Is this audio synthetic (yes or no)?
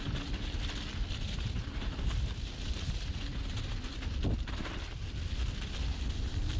no